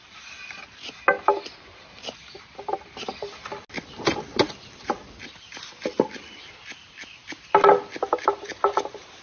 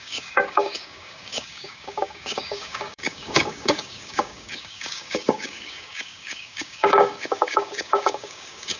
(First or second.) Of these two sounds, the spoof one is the second